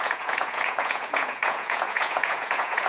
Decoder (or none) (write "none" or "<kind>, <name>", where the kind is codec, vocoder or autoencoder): vocoder, Vocos